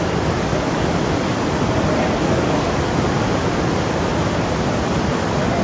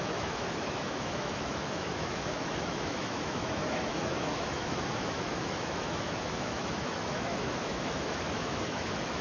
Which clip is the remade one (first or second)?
second